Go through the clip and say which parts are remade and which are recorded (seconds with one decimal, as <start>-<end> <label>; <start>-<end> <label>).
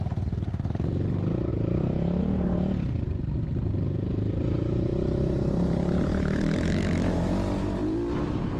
0.0-6.1 recorded; 6.1-7.3 remade; 7.3-8.6 recorded